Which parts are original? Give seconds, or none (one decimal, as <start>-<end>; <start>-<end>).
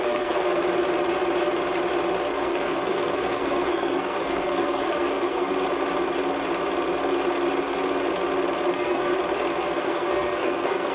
0.6-2.3; 5.5-8.7; 9.1-9.8